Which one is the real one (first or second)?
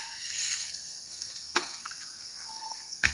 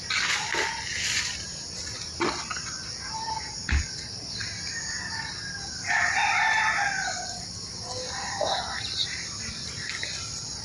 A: second